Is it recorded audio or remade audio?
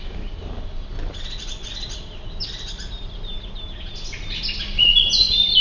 recorded